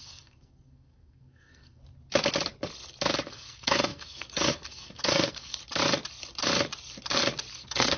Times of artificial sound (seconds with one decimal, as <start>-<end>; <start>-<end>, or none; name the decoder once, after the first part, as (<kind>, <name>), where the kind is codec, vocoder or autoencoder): 0.0-1.8 (codec, SNAC); 3.3-5.6; 7.5-8.0